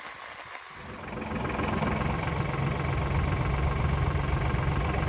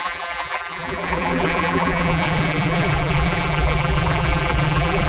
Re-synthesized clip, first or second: second